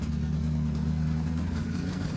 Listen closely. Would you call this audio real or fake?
fake